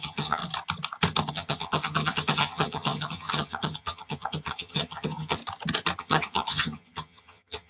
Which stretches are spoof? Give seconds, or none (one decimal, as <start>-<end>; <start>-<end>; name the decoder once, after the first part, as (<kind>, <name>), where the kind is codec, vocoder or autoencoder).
0.0-0.4 (vocoder, HiFi-GAN); 1.3-5.4; 6.0-7.7